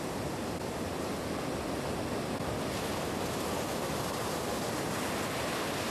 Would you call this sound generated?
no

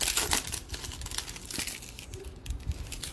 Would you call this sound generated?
no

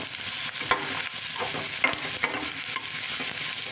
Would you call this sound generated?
no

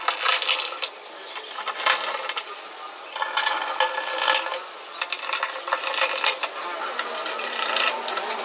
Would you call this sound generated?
no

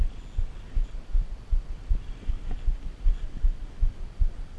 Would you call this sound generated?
no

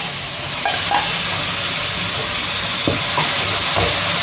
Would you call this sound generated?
no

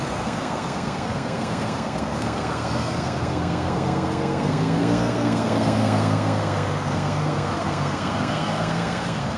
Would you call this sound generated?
yes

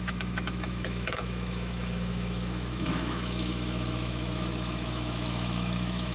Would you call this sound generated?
yes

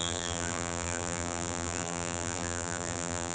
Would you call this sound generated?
yes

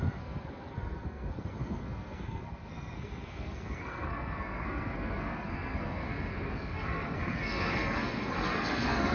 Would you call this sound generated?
yes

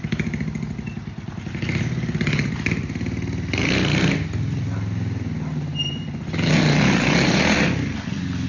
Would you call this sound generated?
no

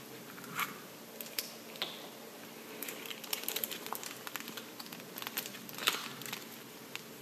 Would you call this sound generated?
no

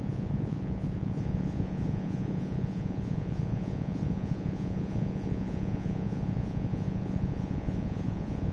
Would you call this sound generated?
yes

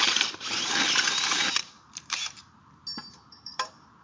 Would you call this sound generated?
yes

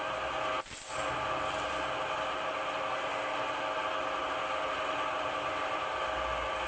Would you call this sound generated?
no